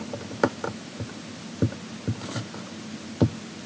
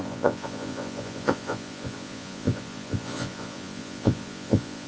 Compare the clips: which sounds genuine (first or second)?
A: first